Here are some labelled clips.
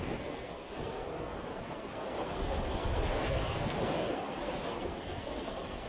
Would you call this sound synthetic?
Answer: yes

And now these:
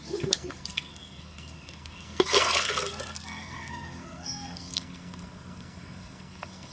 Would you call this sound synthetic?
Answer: yes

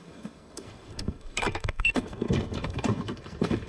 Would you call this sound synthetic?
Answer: yes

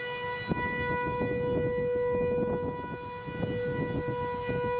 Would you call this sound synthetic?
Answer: no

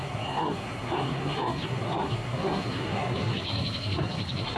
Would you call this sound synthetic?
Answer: yes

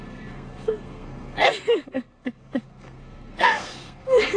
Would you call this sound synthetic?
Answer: yes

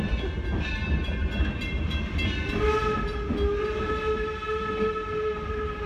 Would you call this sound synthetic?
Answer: no